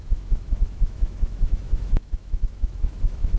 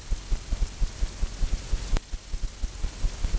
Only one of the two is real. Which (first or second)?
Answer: second